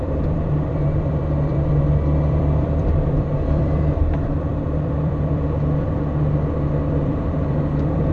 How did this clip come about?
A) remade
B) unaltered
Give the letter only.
A